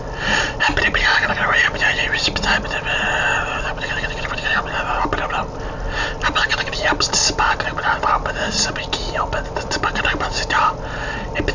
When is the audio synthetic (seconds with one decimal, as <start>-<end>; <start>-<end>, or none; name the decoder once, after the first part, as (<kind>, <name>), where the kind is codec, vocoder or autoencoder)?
none